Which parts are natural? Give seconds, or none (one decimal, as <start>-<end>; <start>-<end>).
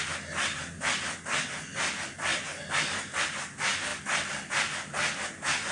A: 0.0-5.7